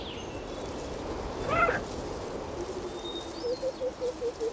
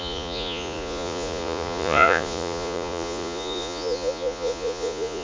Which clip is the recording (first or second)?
first